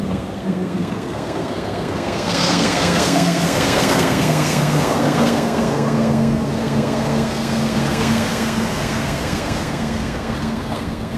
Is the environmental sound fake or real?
fake